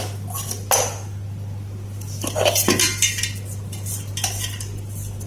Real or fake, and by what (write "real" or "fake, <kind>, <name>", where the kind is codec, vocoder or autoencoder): real